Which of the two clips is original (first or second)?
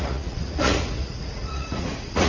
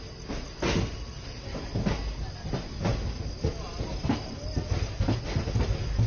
second